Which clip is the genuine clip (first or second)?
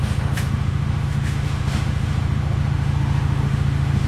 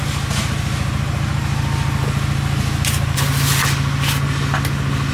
second